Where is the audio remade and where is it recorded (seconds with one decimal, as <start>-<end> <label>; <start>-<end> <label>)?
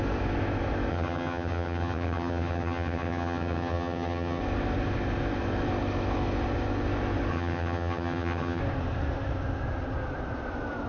0.0-0.9 recorded; 0.9-4.4 remade; 4.4-7.3 recorded; 7.3-8.6 remade; 8.6-10.9 recorded